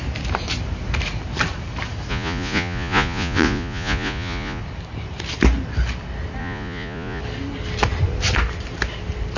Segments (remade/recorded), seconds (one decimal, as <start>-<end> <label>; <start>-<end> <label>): 0.0-2.1 recorded; 2.1-4.6 remade; 4.6-6.4 recorded; 6.4-7.2 remade; 7.2-9.4 recorded